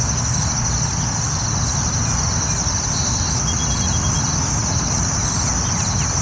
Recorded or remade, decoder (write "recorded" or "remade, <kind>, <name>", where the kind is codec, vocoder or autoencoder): recorded